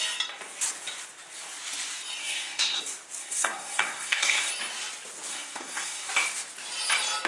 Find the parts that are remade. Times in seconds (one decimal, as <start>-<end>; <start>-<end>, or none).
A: 2.2-2.8; 3.2-4.5; 5.3-6.1

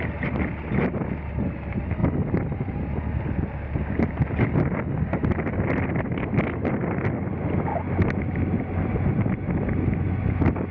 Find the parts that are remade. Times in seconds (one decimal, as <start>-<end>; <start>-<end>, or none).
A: none

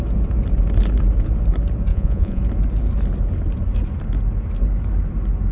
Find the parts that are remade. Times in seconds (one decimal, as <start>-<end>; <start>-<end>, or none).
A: 1.9-2.4

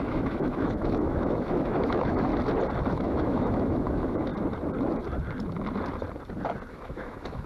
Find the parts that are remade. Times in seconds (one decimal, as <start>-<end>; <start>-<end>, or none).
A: 0.0-2.3; 2.9-4.3; 6.7-7.5

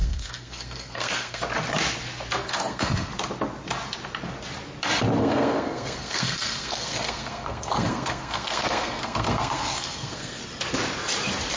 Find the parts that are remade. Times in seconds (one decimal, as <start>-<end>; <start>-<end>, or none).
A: 0.0-1.4; 2.4-3.1; 5.2-10.4

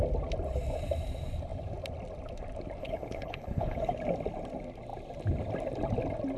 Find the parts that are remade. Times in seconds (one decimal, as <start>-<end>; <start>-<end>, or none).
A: 2.8-3.9